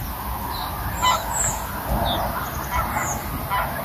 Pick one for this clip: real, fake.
real